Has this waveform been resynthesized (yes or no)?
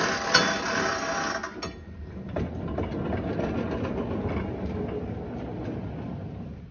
no